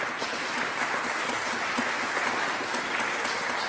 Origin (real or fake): real